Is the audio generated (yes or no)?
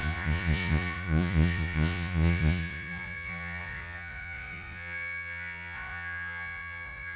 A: yes